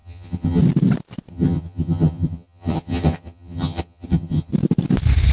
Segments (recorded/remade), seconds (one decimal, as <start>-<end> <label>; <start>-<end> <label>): 0.0-0.6 remade; 0.6-1.3 recorded; 1.3-4.5 remade; 4.5-5.3 recorded